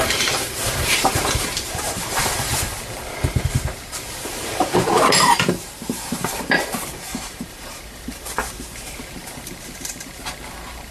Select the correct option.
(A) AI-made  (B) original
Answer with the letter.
A